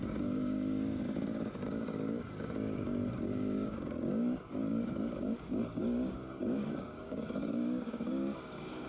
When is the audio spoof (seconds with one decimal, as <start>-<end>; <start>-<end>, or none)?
0.0-8.9